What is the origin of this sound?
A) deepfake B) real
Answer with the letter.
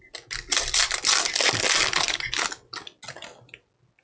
B